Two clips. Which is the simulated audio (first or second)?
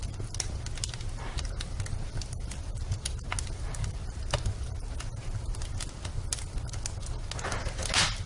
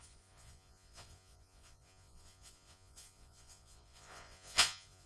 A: second